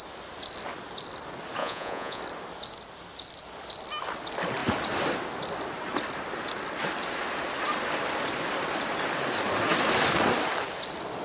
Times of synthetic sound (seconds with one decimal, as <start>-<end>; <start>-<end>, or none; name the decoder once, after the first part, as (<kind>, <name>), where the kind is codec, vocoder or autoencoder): 1.6-2.2 (vocoder, Vocos)

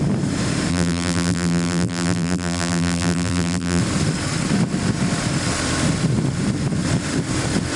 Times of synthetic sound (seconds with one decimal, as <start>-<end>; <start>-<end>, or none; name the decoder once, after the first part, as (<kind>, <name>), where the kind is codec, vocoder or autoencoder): 0.7-3.8 (vocoder, BigVGAN v2)

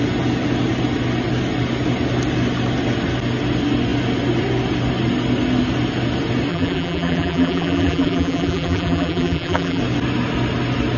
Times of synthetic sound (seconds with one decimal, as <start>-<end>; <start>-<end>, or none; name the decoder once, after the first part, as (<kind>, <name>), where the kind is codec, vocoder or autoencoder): 6.5-9.8 (vocoder, BigVGAN v2)

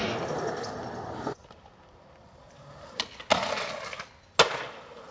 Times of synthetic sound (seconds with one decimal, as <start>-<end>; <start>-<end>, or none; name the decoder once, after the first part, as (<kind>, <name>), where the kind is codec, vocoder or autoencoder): none

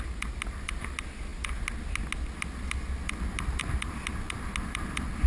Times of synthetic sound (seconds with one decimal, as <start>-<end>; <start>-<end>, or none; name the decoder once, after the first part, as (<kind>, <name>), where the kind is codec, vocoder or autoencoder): none

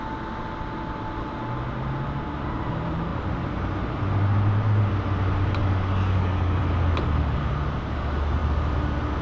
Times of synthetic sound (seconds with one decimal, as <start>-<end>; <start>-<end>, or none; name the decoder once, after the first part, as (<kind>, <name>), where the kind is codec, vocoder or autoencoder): 5.6-6.6 (codec, DAC)